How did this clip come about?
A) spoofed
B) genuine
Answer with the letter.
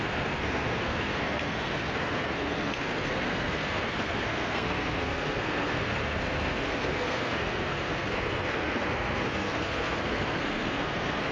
A